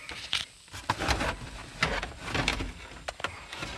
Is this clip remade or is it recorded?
recorded